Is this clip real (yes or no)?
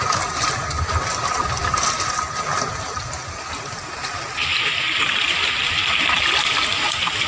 yes